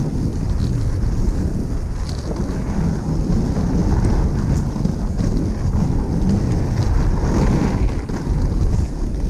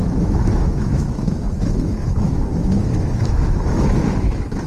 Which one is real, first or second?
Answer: first